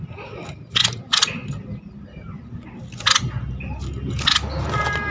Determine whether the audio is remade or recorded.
recorded